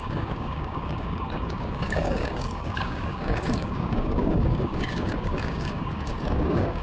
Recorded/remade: remade